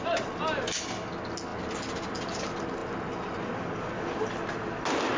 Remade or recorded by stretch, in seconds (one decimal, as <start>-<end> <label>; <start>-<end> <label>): 0.0-5.2 recorded